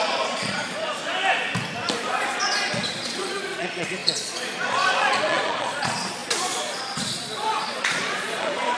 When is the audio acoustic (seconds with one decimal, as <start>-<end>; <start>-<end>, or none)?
1.0-2.1